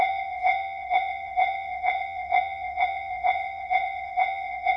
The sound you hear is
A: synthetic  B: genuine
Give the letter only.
A